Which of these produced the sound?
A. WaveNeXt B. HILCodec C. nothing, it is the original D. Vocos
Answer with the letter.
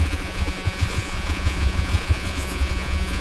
D